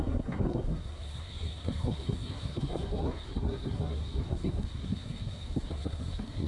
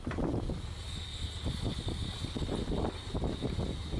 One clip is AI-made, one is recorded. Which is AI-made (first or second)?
first